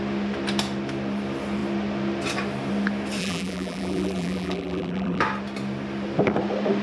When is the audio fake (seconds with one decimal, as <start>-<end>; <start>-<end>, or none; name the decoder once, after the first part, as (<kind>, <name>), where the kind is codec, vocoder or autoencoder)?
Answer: 3.2-5.2 (vocoder, BigVGAN v2)